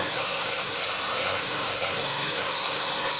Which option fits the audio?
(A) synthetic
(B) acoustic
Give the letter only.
A